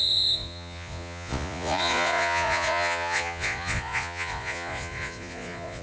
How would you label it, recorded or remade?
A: remade